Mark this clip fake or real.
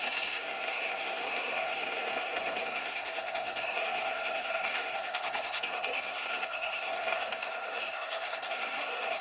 fake